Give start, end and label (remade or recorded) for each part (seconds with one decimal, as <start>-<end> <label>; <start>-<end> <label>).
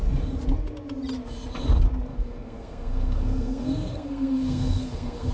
0.0-2.1 recorded; 2.1-5.3 remade